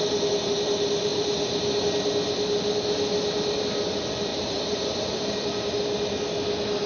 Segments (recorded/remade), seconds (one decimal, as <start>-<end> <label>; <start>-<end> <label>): 0.0-4.3 recorded; 4.3-5.5 remade; 5.5-6.9 recorded